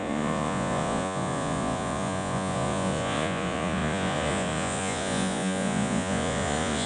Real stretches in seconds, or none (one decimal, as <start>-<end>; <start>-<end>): none